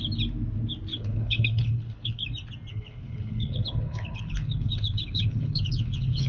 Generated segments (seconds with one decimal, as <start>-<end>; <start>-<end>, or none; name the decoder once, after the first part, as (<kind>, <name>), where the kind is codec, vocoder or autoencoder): 0.9-2.2 (codec, HILCodec); 2.7-6.3